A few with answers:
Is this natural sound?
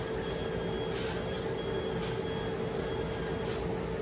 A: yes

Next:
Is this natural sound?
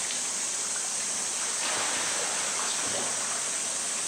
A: yes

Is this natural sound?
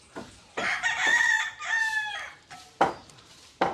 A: no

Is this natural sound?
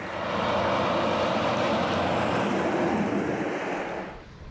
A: yes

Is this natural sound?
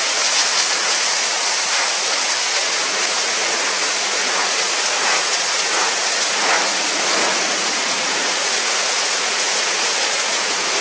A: no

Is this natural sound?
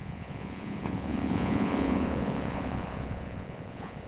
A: no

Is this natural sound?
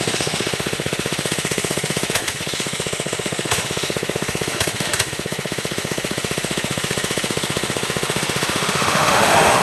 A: no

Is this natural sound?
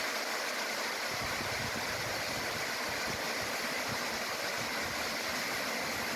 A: yes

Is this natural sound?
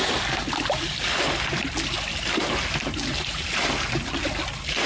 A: yes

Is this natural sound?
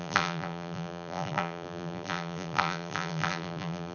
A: no